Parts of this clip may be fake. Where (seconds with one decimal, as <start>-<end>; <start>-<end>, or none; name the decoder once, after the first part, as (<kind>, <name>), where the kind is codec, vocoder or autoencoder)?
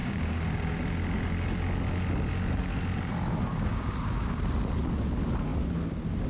0.0-0.8 (codec, DAC); 3.5-4.4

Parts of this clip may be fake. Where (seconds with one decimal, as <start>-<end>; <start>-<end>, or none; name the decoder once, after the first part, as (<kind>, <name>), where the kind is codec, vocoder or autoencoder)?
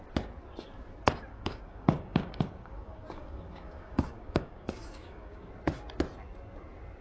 1.3-5.5 (codec, DAC)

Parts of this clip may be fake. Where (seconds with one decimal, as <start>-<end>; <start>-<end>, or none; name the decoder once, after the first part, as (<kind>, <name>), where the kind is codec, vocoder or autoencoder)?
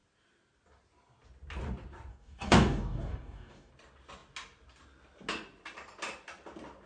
2.1-3.7 (codec, DAC)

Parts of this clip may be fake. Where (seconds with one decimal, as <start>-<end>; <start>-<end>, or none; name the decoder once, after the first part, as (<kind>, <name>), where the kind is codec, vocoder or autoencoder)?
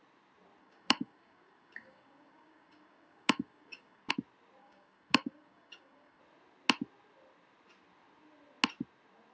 0.6-4.1 (codec, DAC); 4.6-6.2